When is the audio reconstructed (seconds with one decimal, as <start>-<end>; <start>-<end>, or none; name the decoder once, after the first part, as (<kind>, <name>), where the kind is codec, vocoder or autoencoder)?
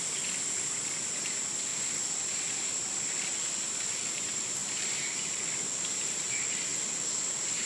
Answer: none